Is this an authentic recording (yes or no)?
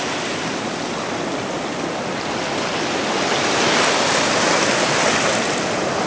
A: yes